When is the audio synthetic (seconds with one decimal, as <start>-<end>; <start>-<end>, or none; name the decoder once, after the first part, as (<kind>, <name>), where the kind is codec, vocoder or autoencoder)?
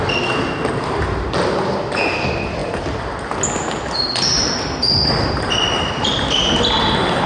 none